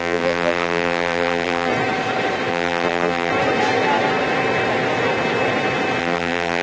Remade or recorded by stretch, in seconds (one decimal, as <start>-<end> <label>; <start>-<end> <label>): 0.0-1.7 remade; 1.7-2.5 recorded; 2.5-3.3 remade; 3.3-6.0 recorded; 6.0-6.6 remade